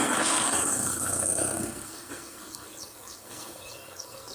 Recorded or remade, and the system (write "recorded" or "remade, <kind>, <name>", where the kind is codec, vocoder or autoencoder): remade, codec, SNAC